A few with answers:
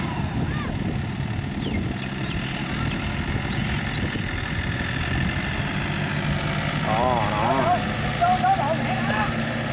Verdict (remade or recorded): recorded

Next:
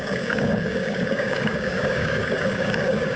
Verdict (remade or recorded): remade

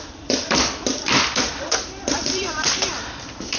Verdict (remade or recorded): remade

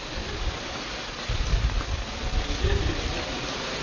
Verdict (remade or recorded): recorded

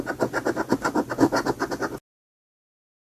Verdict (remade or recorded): recorded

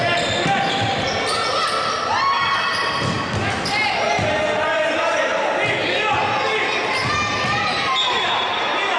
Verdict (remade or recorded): recorded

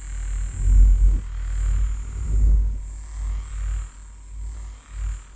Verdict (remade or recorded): recorded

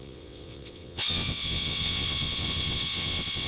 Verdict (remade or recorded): remade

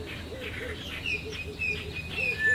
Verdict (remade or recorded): recorded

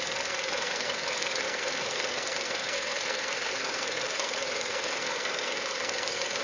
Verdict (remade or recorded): remade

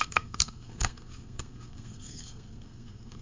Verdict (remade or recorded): remade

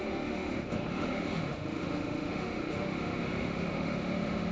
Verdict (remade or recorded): remade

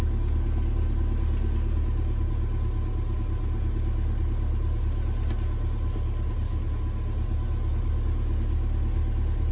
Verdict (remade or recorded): recorded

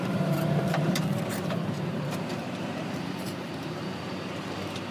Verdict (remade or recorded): remade